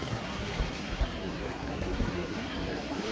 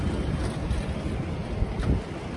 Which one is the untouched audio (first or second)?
second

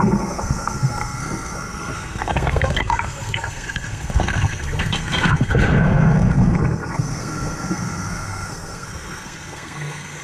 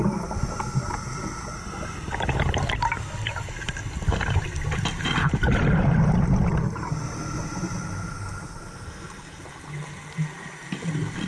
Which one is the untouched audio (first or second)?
second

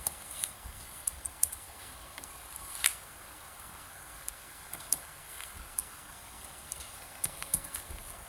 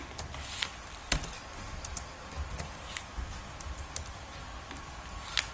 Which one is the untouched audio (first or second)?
second